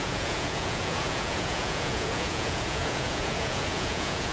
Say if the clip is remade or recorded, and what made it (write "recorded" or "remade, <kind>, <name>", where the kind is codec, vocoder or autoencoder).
remade, vocoder, Vocos